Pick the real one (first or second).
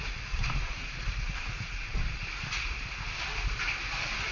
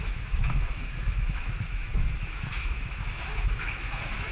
first